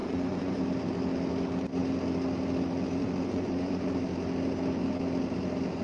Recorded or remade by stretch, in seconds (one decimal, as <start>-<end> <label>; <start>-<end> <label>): 0.0-0.6 remade; 0.6-3.0 recorded; 3.0-4.0 remade; 4.0-5.8 recorded